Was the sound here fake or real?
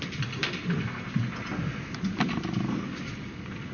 real